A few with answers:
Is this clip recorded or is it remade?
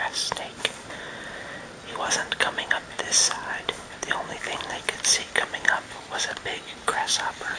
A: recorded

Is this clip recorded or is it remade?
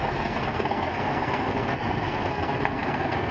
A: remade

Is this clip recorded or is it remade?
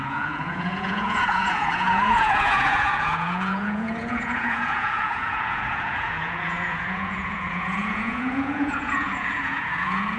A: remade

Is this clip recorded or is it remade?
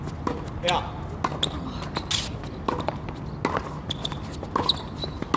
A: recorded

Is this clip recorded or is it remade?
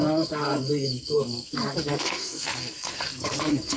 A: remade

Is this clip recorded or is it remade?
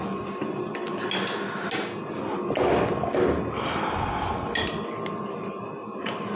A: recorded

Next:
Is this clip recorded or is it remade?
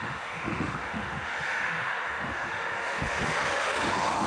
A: remade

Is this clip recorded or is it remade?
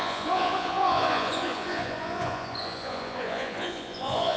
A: remade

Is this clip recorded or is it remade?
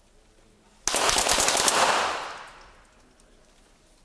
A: recorded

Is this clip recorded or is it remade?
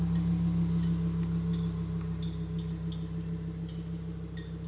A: recorded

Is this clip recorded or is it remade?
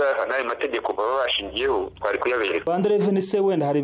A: recorded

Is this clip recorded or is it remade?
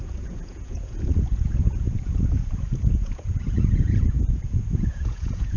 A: remade